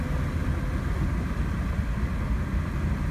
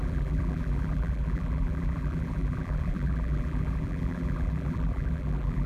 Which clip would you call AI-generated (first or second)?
second